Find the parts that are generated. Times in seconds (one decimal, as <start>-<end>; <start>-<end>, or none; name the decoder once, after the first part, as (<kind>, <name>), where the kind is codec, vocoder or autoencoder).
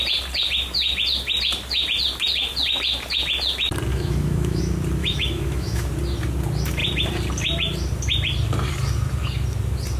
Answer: 3.9-4.6 (autoencoder, DAC-VAE); 5.0-5.9